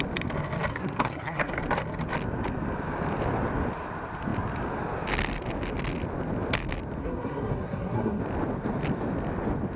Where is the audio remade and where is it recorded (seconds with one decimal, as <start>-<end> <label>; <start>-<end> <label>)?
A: 0.0-0.7 recorded; 0.7-1.6 remade; 1.6-7.0 recorded; 7.0-8.2 remade; 8.2-9.8 recorded